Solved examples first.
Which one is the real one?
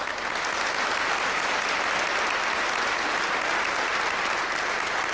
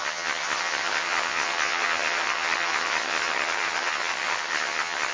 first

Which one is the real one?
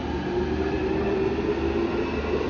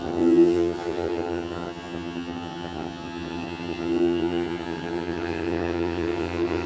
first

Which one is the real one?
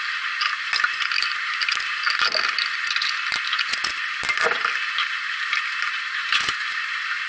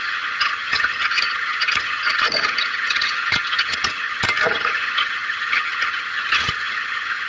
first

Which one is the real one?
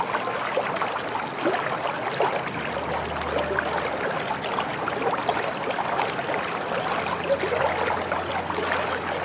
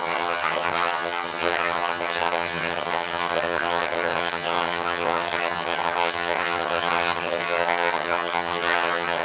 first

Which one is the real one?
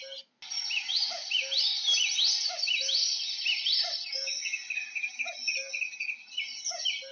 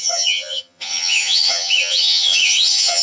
first